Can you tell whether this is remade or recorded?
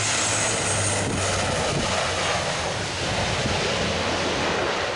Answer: recorded